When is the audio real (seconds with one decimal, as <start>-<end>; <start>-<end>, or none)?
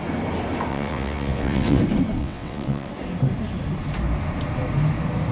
0.0-0.7; 1.8-2.2; 2.9-5.3